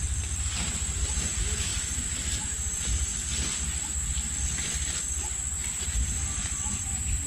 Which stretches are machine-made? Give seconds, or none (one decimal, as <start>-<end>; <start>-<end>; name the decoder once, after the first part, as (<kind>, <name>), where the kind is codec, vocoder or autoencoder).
0.0-1.7 (vocoder, BigVGAN v2); 2.4-3.1; 6.8-7.3

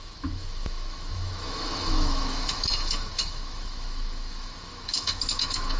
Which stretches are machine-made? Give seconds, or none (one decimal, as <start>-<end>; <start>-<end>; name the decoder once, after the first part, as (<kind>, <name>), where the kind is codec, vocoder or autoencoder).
0.0-5.8 (autoencoder, DAC-VAE)

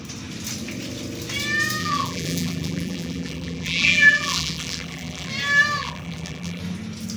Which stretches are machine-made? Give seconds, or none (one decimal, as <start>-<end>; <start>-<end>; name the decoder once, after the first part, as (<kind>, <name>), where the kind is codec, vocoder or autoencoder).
1.8-5.3 (vocoder, BigVGAN v2); 5.8-6.6

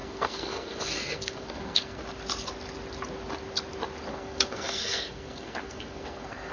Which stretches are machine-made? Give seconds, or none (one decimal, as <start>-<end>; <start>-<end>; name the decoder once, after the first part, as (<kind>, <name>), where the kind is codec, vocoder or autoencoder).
0.0-2.0 (codec, SNAC); 4.1-6.5

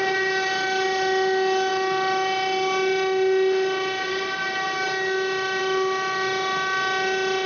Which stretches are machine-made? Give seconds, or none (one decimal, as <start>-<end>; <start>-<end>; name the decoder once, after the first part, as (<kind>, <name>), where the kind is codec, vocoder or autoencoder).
none

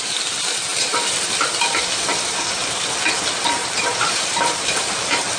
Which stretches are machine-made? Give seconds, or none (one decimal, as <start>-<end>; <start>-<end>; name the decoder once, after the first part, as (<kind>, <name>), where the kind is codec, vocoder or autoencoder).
3.6-4.8 (vocoder, BigVGAN v2)